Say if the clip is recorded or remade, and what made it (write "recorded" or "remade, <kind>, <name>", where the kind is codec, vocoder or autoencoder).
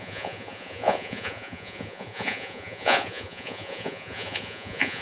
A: remade, vocoder, Vocos